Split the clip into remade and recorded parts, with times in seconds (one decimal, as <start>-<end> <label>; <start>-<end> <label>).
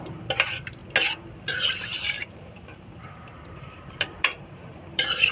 0.0-0.8 remade; 0.8-1.7 recorded; 1.7-5.3 remade